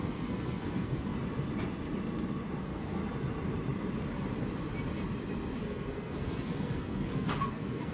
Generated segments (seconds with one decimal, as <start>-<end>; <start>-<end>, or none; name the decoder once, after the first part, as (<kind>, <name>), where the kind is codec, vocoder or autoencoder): 0.0-1.1 (codec, SNAC); 2.6-3.0; 5.6-7.9